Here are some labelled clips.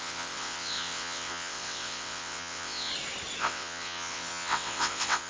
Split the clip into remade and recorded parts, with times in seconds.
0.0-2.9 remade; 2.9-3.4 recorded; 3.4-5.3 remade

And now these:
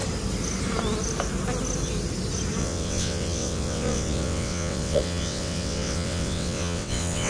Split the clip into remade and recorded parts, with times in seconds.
0.0-2.6 recorded; 2.6-7.3 remade

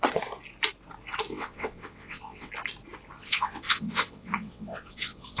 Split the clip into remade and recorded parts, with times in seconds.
0.0-1.3 recorded; 1.3-2.5 remade; 2.5-3.2 recorded; 3.2-5.4 remade

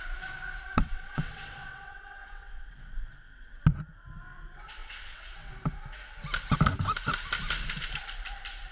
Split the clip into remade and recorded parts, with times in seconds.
0.0-0.7 recorded; 0.7-3.6 remade; 3.6-4.8 recorded; 4.8-5.5 remade; 5.5-8.7 recorded

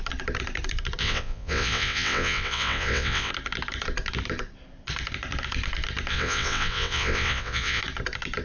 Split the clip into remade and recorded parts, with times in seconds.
0.0-1.0 recorded; 1.0-3.3 remade; 3.3-6.1 recorded; 6.1-7.8 remade; 7.8-8.4 recorded

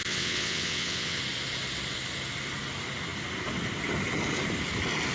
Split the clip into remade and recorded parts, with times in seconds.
0.0-1.2 remade; 1.2-5.1 recorded

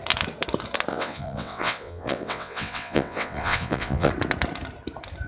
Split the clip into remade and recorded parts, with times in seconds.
0.0-0.9 recorded; 0.9-4.1 remade; 4.1-5.3 recorded

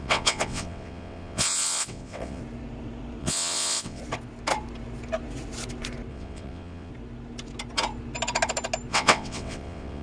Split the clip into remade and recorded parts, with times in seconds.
0.0-2.4 remade; 2.4-3.2 recorded; 3.2-4.0 remade; 4.0-6.1 recorded; 6.1-6.9 remade; 6.9-8.9 recorded; 8.9-10.0 remade